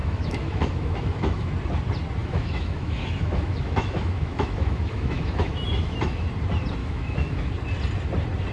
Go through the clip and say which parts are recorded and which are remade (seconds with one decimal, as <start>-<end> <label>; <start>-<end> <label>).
0.0-1.5 remade; 1.5-2.2 recorded; 2.2-6.3 remade; 6.3-6.8 recorded; 6.8-7.5 remade; 7.5-8.5 recorded